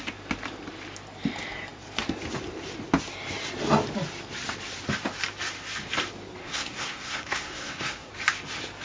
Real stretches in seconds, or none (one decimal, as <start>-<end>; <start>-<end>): 0.0-6.4; 8.1-8.8